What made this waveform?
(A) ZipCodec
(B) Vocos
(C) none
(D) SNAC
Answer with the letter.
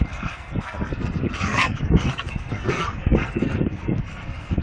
D